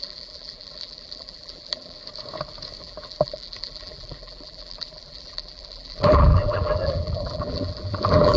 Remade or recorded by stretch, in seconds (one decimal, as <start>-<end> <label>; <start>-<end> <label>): 0.0-2.0 remade; 2.0-2.8 recorded; 2.8-8.4 remade